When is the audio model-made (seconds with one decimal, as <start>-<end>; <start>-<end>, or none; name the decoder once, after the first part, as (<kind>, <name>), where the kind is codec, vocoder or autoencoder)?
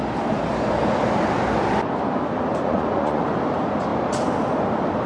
2.6-3.2 (vocoder, Vocos)